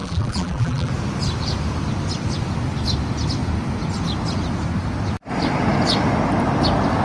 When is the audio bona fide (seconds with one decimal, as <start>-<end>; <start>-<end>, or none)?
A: 0.9-7.0